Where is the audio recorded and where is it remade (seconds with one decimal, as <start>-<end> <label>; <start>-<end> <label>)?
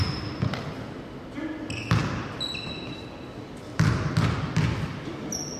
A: 0.0-5.6 recorded